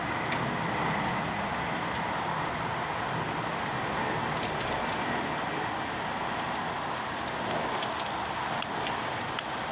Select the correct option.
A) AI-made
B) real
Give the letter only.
B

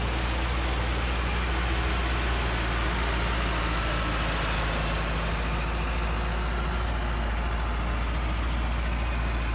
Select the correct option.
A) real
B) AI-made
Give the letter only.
A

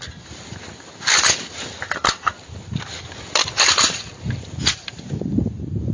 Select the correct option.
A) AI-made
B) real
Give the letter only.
B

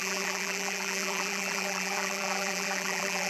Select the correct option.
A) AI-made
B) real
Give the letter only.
A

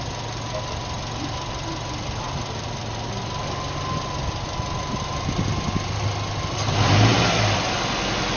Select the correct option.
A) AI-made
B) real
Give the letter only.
B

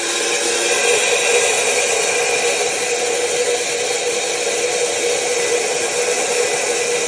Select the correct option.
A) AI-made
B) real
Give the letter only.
B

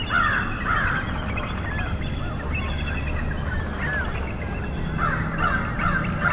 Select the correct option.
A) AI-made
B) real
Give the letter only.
B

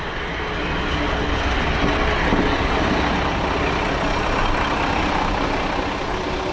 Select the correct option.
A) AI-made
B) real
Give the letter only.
B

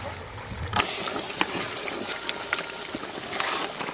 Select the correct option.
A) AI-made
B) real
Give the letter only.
B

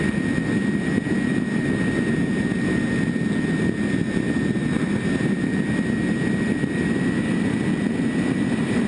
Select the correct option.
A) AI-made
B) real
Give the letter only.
B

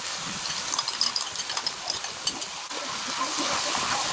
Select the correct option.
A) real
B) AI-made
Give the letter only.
A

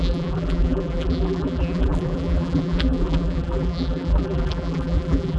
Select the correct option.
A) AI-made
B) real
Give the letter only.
A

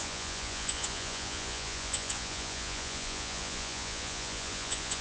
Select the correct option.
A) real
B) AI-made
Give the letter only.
B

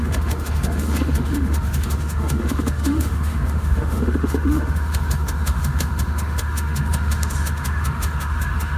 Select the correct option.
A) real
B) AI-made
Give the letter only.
B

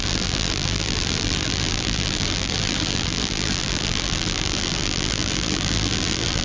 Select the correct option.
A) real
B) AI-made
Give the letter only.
B